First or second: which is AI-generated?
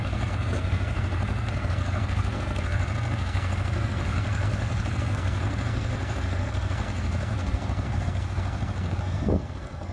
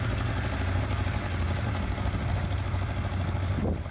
first